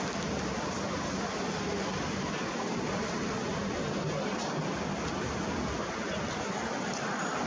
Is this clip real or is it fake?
real